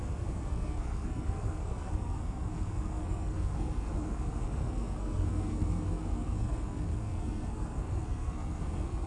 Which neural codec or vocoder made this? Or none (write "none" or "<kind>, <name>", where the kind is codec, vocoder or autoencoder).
codec, SNAC